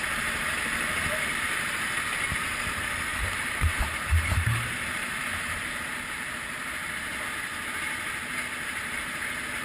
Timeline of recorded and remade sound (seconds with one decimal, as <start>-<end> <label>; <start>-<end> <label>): 0.0-3.1 recorded; 3.1-5.7 remade; 5.7-9.6 recorded